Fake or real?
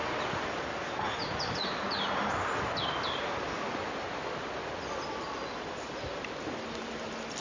real